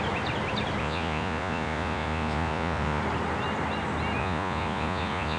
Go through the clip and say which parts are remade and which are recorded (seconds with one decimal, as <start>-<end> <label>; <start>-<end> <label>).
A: 0.0-0.8 recorded; 0.8-3.0 remade; 3.0-4.2 recorded; 4.2-5.4 remade